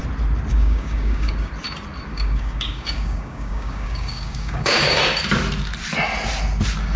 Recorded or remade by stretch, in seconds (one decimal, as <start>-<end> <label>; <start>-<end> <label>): 0.0-0.5 recorded; 0.5-1.5 remade; 1.5-2.1 recorded; 2.1-5.0 remade; 5.0-7.0 recorded